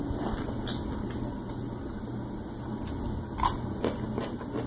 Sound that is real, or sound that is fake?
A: real